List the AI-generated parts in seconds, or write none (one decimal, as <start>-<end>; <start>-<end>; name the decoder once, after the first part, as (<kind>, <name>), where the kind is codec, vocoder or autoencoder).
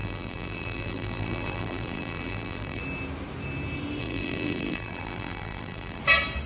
0.0-2.8 (vocoder, BigVGAN v2); 4.0-6.0